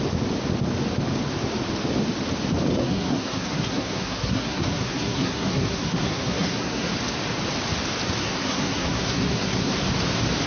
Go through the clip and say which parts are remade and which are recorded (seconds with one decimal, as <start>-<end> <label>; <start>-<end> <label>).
0.0-2.8 recorded; 2.8-6.9 remade; 6.9-8.2 recorded; 8.2-9.7 remade; 9.7-10.5 recorded